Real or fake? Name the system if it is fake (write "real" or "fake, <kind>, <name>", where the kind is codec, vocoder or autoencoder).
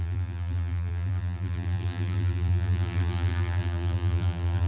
fake, vocoder, BigVGAN v2